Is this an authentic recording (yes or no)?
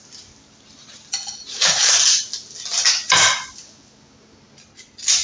yes